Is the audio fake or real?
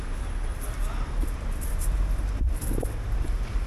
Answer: real